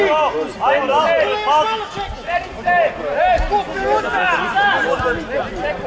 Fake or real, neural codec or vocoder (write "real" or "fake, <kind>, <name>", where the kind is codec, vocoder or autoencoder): real